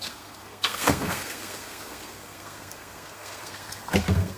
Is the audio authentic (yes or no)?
no